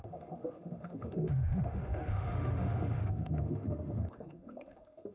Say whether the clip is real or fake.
fake